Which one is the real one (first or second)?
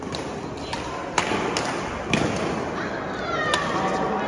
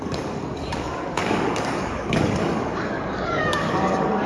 first